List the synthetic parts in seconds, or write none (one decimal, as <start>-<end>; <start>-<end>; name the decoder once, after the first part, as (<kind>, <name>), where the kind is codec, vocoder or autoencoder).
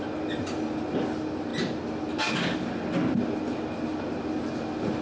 none